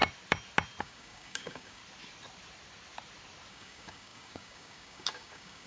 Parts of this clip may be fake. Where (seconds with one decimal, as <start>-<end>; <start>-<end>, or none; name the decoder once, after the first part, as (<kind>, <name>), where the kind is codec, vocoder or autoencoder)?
0.8-1.8 (codec, DAC); 3.5-5.7